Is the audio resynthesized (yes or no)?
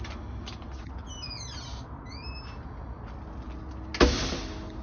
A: no